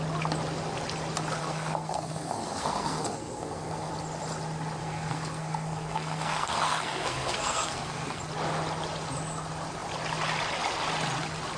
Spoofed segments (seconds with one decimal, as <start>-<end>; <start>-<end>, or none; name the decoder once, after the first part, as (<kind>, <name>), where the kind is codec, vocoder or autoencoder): 1.4-3.9 (codec, SNAC); 4.8-8.2